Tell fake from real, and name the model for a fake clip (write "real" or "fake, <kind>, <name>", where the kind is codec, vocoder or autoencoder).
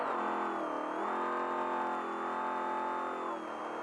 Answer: real